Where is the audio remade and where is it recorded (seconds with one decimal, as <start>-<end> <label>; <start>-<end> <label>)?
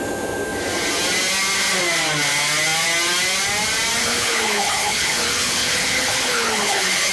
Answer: 0.0-4.0 recorded; 4.0-7.1 remade